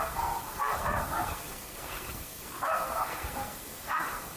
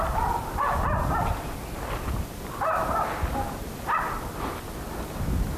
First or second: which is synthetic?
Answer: first